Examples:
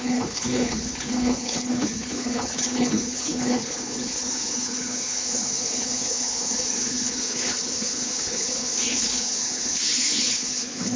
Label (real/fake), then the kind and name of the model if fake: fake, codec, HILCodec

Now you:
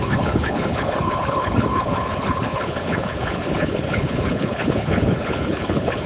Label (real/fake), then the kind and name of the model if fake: fake, codec, HILCodec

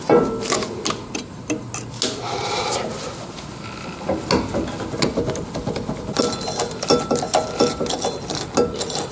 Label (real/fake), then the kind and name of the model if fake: real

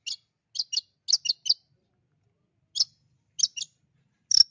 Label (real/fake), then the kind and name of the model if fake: real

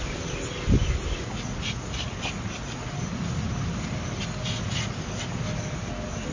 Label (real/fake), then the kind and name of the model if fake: real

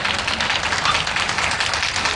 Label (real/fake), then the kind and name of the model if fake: real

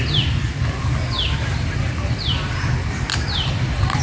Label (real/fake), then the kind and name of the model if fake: real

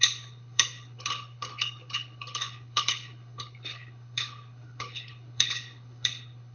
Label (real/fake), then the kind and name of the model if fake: fake, codec, HILCodec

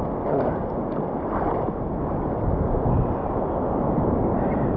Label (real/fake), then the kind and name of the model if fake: real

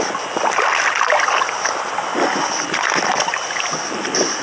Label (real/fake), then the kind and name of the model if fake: real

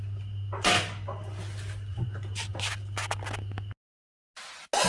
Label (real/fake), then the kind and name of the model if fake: real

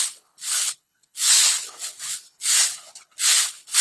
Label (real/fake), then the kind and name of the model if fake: fake, codec, HILCodec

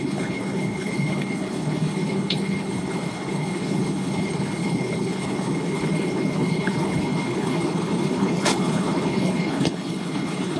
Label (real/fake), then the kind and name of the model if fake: fake, codec, HILCodec